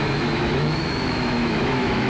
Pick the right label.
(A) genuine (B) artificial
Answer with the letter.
B